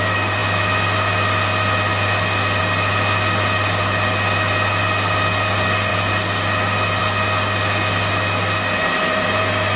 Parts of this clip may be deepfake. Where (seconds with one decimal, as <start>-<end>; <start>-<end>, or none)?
none